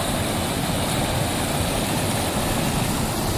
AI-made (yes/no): no